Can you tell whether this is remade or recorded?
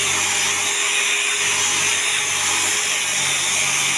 recorded